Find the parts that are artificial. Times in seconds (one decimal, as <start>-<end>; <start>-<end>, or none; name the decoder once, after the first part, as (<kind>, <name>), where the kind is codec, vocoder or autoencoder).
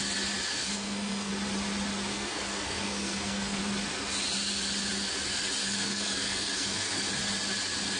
0.5-1.3 (codec, SNAC); 2.1-3.6; 5.6-7.1